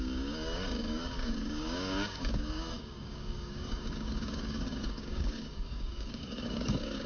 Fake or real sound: fake